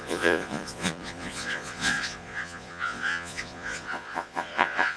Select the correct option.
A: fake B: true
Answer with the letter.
A